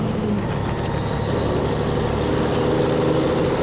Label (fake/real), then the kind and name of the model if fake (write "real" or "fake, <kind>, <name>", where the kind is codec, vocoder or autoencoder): real